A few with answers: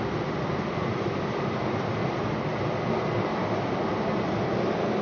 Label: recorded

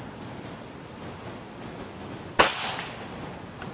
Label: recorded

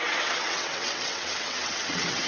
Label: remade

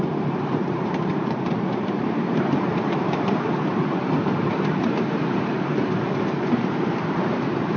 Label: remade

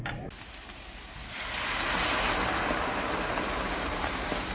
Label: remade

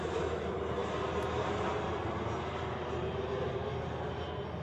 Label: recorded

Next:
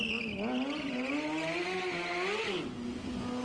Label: recorded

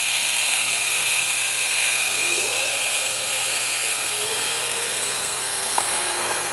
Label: remade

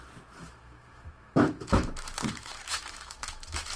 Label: remade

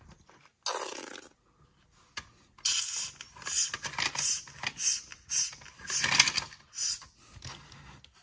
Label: recorded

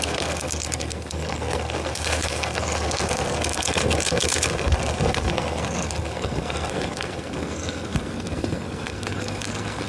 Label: remade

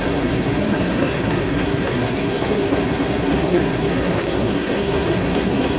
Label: remade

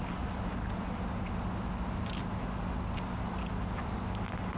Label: recorded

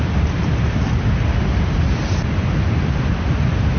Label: recorded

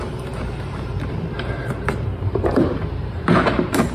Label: remade